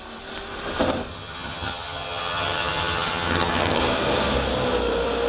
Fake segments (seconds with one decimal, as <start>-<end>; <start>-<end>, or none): 1.1-3.8